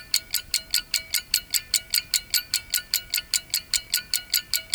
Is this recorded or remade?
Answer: recorded